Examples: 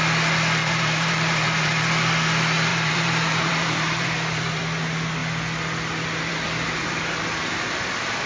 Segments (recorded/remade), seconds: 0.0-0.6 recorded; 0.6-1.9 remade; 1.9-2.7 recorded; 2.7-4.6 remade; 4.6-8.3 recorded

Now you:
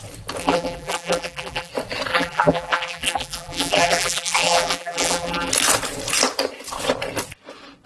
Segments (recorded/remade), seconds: 0.0-0.4 recorded; 0.4-1.7 remade; 1.7-2.1 recorded; 2.1-5.5 remade; 5.5-7.9 recorded

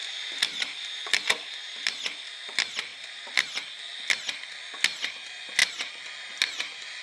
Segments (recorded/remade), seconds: 0.0-1.7 remade; 1.7-2.9 recorded; 2.9-3.8 remade; 3.8-7.0 recorded

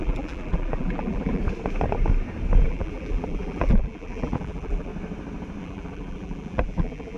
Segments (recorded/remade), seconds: 0.0-1.4 remade; 1.4-2.6 recorded; 2.6-4.9 remade; 4.9-5.6 recorded; 5.6-7.2 remade